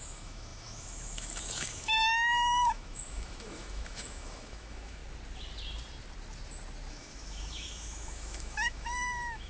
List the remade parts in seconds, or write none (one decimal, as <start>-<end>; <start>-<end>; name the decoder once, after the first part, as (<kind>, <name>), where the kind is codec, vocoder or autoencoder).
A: 0.0-5.0 (autoencoder, DAC-VAE); 6.9-9.5